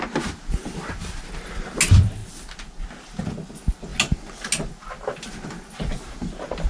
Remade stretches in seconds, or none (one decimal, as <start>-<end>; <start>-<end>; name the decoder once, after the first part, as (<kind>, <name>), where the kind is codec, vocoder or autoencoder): none